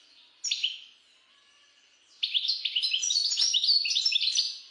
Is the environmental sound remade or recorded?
recorded